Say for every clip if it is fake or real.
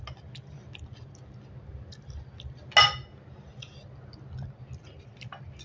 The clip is real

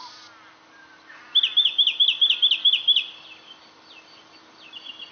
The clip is real